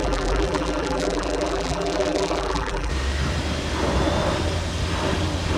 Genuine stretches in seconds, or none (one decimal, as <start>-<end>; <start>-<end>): 2.9-5.6